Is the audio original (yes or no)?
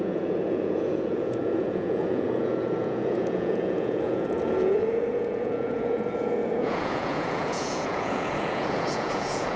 no